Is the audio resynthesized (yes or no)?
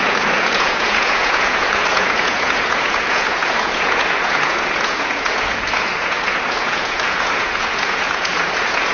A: yes